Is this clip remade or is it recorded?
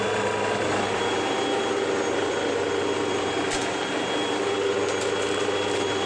recorded